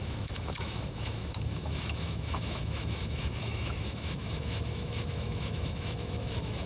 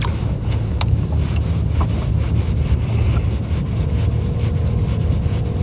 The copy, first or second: first